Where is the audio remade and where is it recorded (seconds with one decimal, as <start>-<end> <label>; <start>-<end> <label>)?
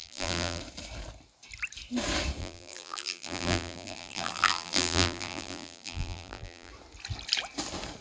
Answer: 0.0-0.6 remade; 0.6-2.4 recorded; 2.4-6.7 remade; 6.7-8.0 recorded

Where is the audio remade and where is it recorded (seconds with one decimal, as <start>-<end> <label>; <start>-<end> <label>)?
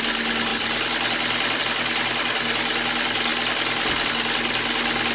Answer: 0.0-5.1 recorded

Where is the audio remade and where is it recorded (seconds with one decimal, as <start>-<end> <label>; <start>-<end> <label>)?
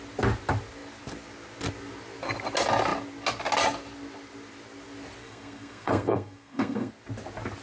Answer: 0.0-5.2 recorded; 5.2-6.9 remade; 6.9-7.6 recorded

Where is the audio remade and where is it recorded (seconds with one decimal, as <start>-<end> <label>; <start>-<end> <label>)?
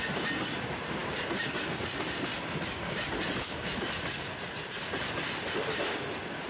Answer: 0.0-6.5 recorded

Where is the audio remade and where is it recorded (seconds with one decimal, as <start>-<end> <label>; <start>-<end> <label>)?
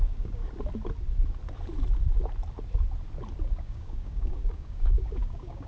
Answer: 0.0-0.4 remade; 0.4-3.6 recorded; 3.6-5.7 remade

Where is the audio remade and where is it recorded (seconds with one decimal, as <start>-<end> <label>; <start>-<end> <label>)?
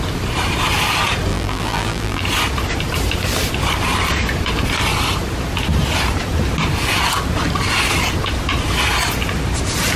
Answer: 0.0-1.3 recorded; 1.3-2.2 remade; 2.2-10.0 recorded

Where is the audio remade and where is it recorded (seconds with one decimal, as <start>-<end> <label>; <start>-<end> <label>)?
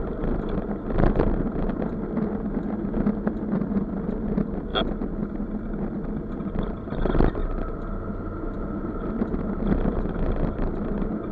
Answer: 0.0-4.7 remade; 4.7-5.6 recorded; 5.6-7.4 remade; 7.4-8.1 recorded; 8.1-11.3 remade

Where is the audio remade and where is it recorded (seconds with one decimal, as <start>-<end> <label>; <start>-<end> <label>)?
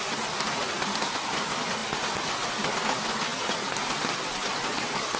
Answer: 0.0-5.2 recorded